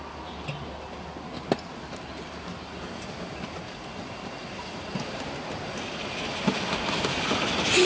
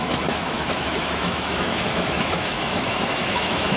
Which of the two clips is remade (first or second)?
second